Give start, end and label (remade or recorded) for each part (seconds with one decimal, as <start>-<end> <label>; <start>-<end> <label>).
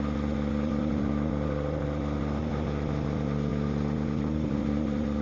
0.0-5.2 remade